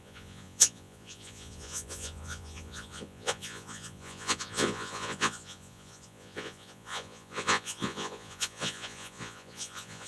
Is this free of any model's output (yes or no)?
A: no